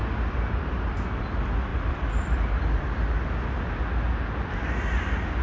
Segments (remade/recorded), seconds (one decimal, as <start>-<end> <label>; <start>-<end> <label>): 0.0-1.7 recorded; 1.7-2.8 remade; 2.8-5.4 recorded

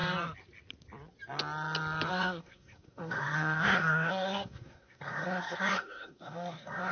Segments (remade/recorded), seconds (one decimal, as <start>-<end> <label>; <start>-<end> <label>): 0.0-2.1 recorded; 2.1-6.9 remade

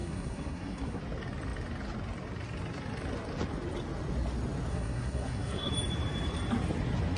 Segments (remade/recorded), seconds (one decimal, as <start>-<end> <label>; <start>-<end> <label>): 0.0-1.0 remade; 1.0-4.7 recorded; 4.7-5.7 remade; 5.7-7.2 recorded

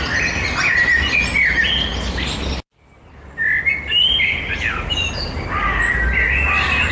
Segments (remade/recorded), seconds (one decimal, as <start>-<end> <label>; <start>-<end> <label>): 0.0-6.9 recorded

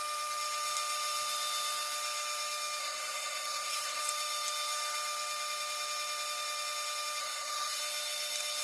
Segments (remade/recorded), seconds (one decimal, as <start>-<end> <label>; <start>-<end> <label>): 0.0-2.8 recorded; 2.8-4.0 remade; 4.0-7.2 recorded; 7.2-7.8 remade; 7.8-8.6 recorded

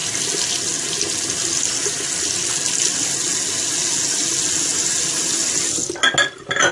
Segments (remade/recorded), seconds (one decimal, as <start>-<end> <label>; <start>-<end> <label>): 0.0-6.7 recorded

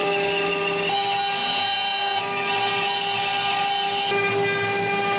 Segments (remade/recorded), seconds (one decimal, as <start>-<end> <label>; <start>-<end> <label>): 0.0-1.4 recorded; 1.4-2.2 remade; 2.2-5.2 recorded

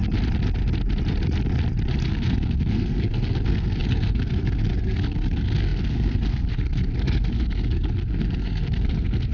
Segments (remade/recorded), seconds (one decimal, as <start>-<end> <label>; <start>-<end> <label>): 0.0-2.1 recorded; 2.1-9.3 remade